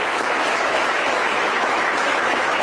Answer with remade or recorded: remade